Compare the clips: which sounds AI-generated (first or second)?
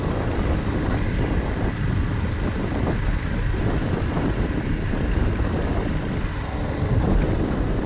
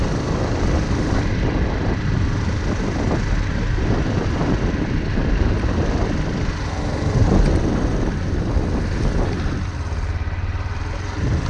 first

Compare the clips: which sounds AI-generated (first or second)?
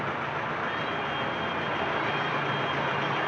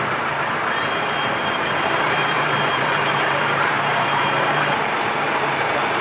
second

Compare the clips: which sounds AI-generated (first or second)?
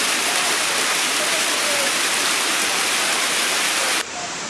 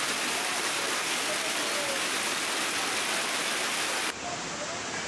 first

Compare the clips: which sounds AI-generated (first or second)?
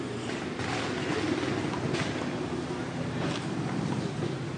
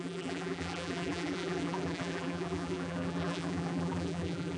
second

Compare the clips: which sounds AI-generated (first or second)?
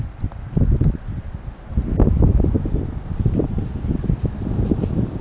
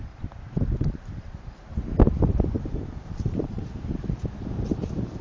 second